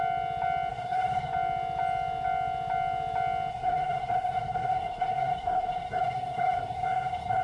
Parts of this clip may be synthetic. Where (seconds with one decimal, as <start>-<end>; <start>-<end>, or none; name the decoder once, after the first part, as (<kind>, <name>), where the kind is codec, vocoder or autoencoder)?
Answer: 0.7-1.3 (codec, SNAC); 3.5-7.4

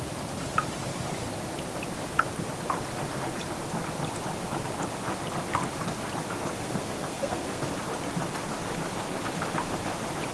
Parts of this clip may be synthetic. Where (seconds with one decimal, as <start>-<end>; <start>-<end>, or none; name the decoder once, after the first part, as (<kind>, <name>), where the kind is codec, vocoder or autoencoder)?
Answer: 6.5-7.7 (codec, SNAC)

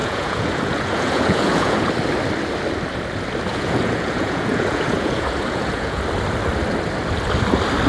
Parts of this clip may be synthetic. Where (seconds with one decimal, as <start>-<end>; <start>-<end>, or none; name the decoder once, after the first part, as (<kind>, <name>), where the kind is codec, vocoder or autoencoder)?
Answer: 0.0-1.9 (vocoder, Vocos); 3.5-6.0

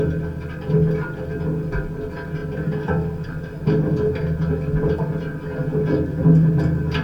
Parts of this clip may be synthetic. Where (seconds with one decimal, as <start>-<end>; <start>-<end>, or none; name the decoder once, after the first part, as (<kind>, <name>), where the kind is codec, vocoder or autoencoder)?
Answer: none

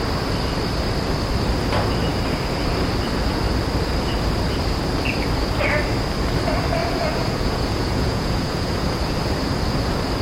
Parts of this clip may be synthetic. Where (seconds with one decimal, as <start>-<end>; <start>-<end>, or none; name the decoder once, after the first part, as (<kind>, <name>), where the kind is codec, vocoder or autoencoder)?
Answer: 6.8-9.0 (vocoder, Vocos)

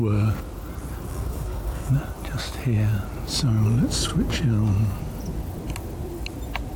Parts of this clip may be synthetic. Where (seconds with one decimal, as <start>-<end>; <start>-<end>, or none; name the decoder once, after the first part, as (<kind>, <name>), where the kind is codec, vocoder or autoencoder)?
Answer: 1.1-1.9 (codec, SNAC)